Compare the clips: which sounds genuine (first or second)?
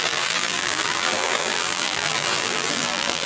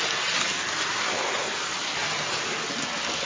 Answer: second